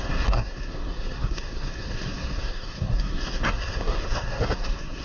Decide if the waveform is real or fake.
fake